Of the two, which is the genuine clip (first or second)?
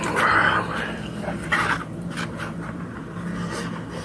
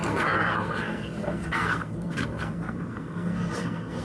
first